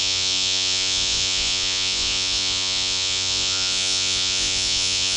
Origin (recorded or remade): remade